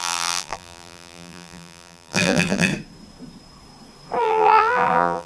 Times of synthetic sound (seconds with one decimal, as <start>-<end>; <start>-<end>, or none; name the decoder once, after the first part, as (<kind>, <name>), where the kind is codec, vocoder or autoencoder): 0.0-2.7 (vocoder, BigVGAN v2); 4.2-5.3